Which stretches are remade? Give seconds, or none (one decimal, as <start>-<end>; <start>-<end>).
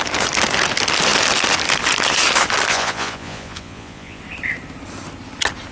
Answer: 2.7-4.2